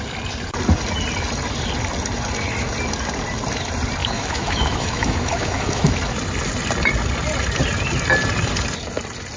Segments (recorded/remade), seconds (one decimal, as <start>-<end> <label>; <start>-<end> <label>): 0.0-4.0 recorded; 4.0-5.9 remade; 5.9-9.4 recorded